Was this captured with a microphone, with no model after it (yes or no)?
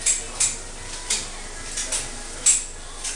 yes